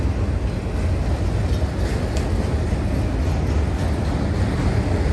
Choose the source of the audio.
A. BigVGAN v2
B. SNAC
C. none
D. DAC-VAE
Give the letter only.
C